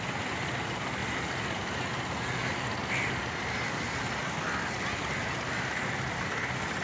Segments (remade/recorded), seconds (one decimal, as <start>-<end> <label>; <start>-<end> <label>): 0.0-6.8 recorded